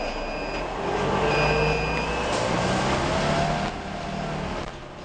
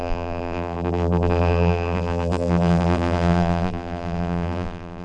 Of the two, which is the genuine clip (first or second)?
first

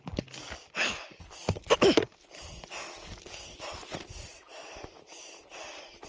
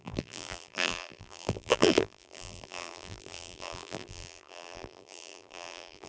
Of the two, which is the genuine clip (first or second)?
first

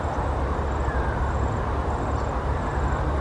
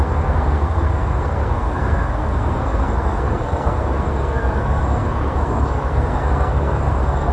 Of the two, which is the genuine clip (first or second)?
first